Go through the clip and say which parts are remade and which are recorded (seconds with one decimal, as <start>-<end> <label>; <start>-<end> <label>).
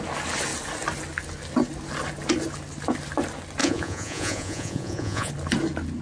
0.0-3.6 recorded; 3.6-5.3 remade; 5.3-6.0 recorded